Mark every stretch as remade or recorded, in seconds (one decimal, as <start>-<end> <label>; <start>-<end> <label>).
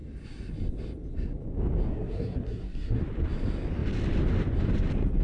0.0-1.9 recorded; 1.9-3.0 remade; 3.0-5.2 recorded